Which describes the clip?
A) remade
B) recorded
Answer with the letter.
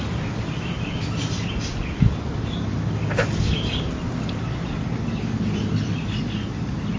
B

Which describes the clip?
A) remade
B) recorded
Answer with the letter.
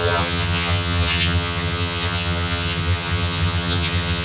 A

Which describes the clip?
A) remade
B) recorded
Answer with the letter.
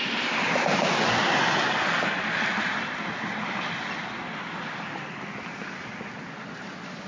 B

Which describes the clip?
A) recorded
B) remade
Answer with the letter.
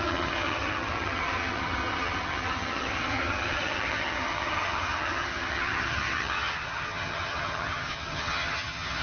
B